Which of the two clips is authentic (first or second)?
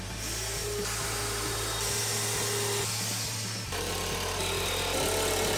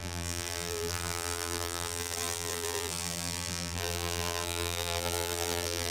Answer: first